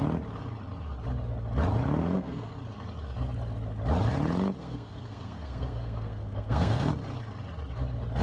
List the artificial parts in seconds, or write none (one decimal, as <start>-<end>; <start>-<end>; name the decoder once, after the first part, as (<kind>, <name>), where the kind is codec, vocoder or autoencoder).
2.0-2.5 (codec, SNAC); 4.6-6.9